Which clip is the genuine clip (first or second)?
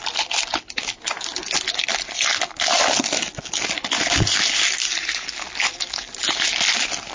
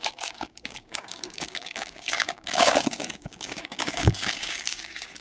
first